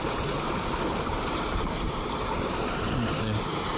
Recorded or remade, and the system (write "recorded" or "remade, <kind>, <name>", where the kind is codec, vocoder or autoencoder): remade, vocoder, BigVGAN v2